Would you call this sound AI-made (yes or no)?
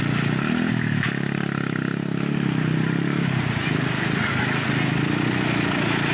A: no